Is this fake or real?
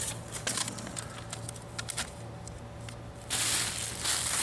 real